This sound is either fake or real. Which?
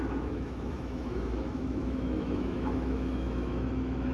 fake